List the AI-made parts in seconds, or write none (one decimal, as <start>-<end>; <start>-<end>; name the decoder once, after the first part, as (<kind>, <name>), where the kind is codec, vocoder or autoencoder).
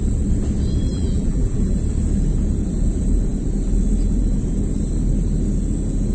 0.9-1.8 (vocoder, BigVGAN v2)